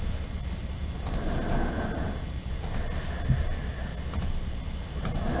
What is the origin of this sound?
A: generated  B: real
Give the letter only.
B